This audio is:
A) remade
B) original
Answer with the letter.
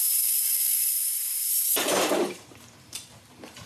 A